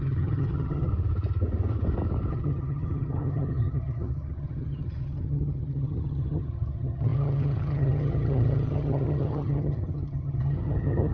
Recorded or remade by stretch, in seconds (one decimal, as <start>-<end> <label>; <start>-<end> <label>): 0.0-0.9 remade; 0.9-2.3 recorded; 2.3-11.1 remade